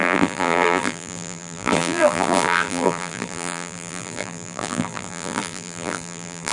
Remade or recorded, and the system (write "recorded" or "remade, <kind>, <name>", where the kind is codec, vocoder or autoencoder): remade, vocoder, BigVGAN v2